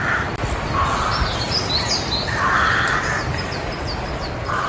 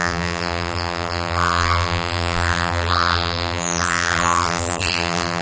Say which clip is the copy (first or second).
second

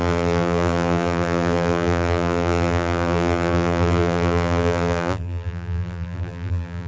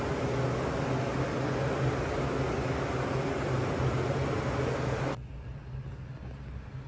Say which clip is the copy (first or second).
first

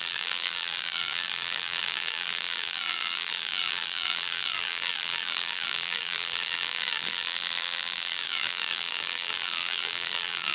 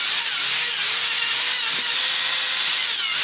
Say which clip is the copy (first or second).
first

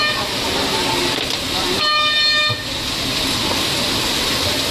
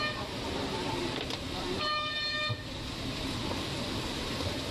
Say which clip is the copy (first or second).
second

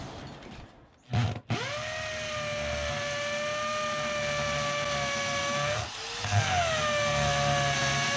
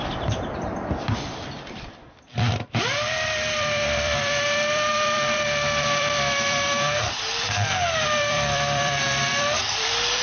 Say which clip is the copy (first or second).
second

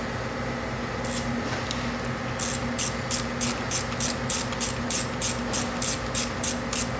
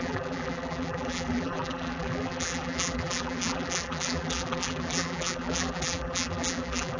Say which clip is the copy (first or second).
second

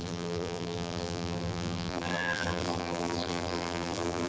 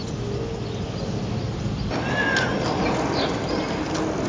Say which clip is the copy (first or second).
first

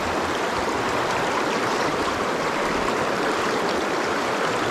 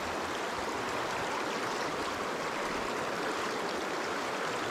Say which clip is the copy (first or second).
first